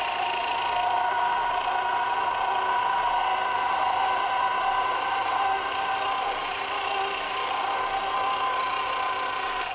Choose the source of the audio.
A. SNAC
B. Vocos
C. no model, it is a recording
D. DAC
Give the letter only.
C